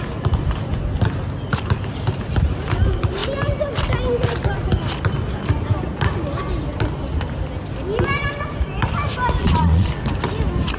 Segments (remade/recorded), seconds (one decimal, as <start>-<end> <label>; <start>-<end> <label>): 0.0-9.4 recorded; 9.4-9.9 remade; 9.9-10.8 recorded